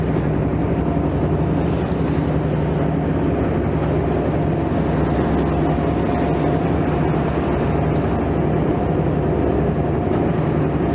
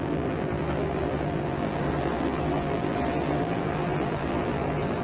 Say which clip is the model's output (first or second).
second